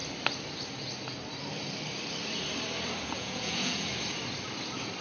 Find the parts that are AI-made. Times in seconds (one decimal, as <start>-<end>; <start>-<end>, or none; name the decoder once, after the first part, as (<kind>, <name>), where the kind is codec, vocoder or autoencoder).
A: 3.0-3.9 (vocoder, Vocos)